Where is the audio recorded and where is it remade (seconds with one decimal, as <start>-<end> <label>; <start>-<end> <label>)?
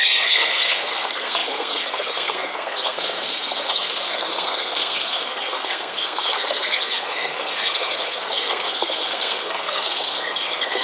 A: 0.0-10.8 remade